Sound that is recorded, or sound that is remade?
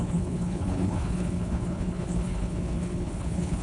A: remade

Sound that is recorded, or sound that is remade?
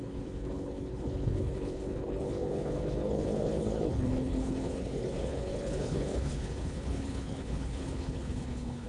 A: remade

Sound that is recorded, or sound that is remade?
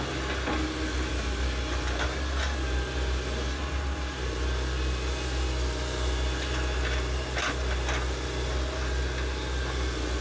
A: recorded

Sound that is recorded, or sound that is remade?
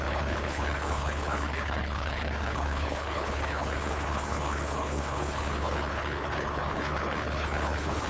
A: remade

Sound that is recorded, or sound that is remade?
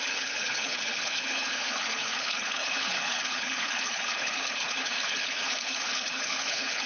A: remade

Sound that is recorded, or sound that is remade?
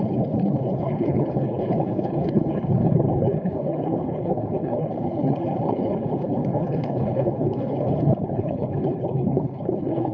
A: remade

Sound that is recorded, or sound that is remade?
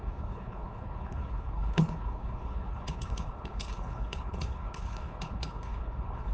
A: remade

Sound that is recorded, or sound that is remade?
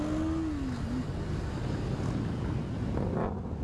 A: recorded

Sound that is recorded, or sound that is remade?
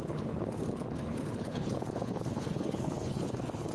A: remade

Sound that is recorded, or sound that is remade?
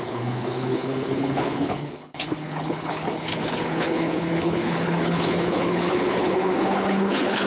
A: remade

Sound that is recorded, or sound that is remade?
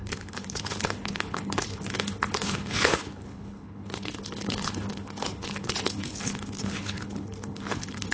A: remade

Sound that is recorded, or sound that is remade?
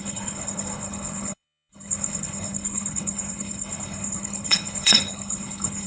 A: remade